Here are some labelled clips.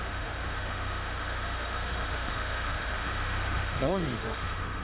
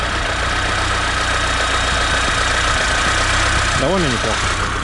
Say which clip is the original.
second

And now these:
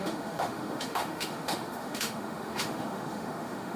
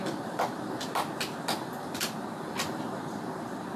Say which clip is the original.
second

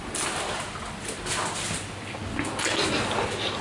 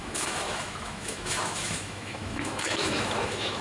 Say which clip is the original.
first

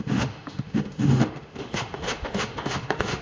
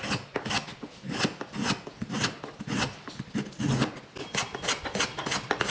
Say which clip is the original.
second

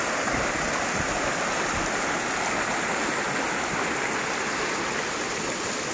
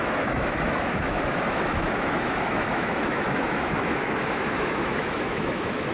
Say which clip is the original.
first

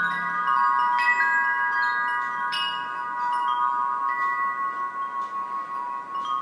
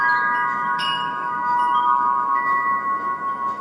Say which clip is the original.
first